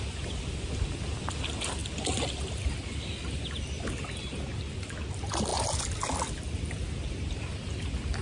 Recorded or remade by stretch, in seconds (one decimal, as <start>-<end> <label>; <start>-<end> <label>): 0.0-8.2 recorded